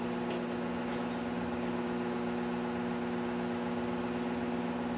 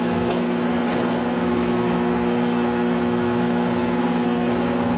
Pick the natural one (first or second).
first